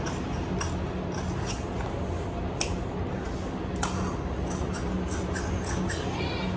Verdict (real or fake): real